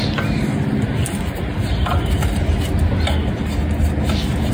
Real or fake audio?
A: real